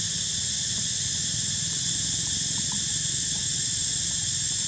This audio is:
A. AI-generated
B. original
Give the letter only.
B